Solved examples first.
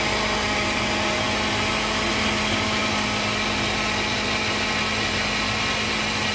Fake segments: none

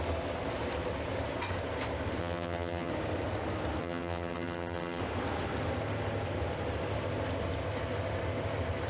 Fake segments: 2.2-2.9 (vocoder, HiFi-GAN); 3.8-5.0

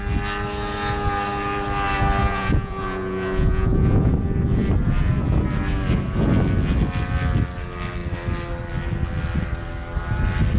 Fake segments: 2.2-4.1 (vocoder, Vocos)

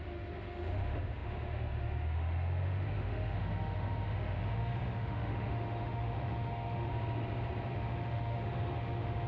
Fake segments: 0.0-6.9 (autoencoder, DAC-VAE); 7.7-9.3

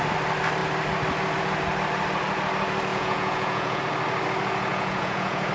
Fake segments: 2.9-3.8 (vocoder, Vocos); 4.7-5.5

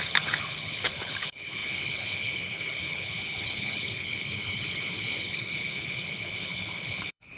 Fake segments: 0.0-7.4 (codec, HILCodec)

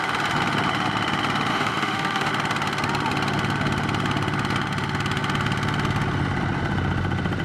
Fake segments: 1.5-2.3 (autoencoder, DAC-VAE)